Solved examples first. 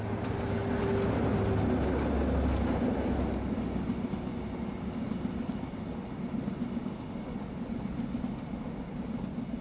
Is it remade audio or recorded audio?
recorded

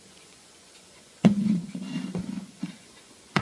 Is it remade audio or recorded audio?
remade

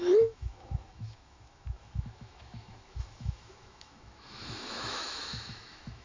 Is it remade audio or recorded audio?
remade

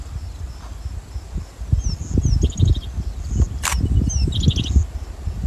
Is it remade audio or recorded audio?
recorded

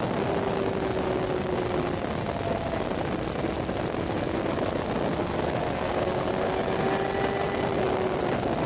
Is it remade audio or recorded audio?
recorded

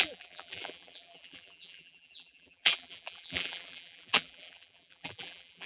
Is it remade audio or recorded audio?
remade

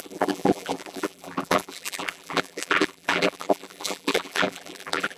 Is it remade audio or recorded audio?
remade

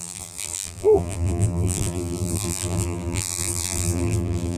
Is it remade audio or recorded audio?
remade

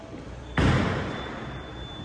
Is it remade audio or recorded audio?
remade